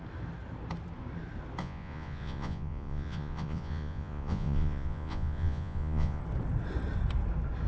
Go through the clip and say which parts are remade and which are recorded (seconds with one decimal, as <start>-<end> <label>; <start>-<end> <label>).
0.0-1.6 recorded; 1.6-6.2 remade; 6.2-7.7 recorded